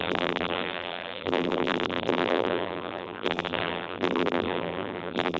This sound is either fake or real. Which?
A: fake